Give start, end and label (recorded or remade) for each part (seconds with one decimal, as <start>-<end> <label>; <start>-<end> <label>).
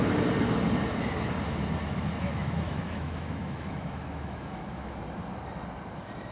0.0-1.8 recorded; 1.8-5.0 remade; 5.0-6.3 recorded